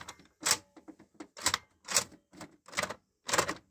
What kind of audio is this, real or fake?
real